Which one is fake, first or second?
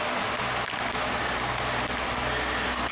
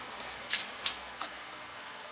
second